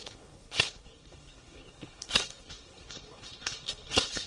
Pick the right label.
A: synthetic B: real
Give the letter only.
A